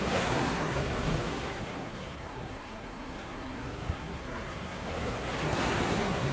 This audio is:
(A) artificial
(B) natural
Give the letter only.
A